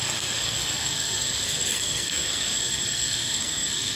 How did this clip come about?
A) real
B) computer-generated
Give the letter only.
B